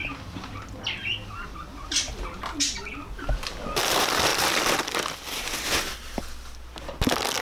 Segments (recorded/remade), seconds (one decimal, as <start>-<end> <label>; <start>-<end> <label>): 0.0-0.5 remade; 0.5-1.0 recorded; 1.0-2.1 remade; 2.1-4.3 recorded; 4.3-6.2 remade; 6.2-7.4 recorded